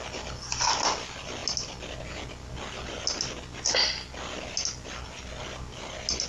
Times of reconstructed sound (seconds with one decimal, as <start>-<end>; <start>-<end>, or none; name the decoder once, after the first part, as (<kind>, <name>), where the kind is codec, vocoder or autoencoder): none